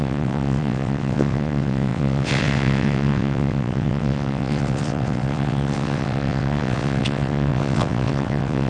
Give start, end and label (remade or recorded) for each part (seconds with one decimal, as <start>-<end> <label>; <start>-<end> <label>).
0.0-8.7 remade